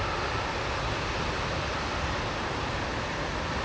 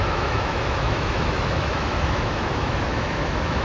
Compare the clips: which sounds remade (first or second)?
second